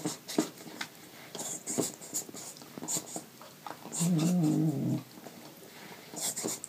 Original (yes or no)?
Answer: yes